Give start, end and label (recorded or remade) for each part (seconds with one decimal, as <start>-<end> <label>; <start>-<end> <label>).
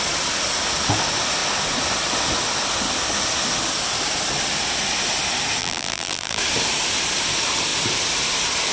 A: 0.0-5.6 recorded; 5.6-6.4 remade; 6.4-8.7 recorded